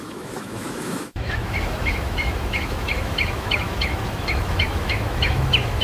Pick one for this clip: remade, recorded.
remade